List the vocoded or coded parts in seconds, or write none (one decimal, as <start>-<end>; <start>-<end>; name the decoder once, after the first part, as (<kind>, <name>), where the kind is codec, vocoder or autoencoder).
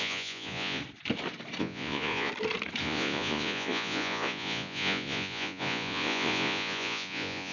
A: 0.0-0.8 (vocoder, Vocos); 1.6-2.3; 2.8-7.5